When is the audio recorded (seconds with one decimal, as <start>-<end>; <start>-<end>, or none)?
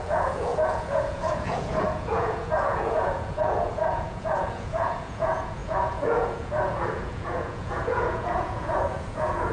none